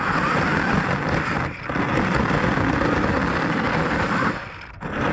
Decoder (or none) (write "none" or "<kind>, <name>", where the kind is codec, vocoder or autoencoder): none